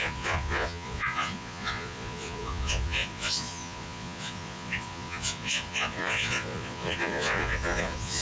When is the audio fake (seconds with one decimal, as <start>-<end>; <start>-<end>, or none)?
0.0-8.2